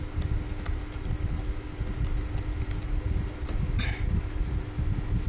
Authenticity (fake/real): real